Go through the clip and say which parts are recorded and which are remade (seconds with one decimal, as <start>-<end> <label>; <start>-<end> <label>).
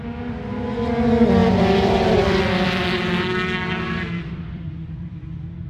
0.0-1.4 recorded; 1.4-3.0 remade; 3.0-4.2 recorded; 4.2-5.2 remade; 5.2-5.7 recorded